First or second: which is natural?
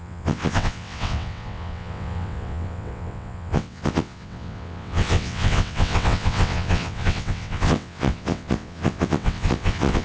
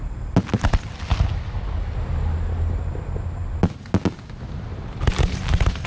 second